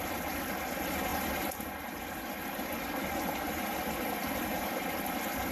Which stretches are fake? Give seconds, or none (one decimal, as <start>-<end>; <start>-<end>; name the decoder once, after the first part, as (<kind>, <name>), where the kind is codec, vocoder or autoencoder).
none